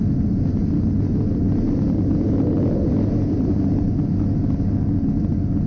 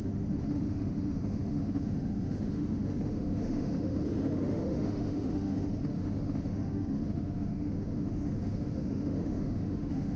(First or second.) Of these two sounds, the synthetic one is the second